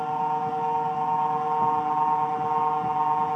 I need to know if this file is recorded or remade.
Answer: recorded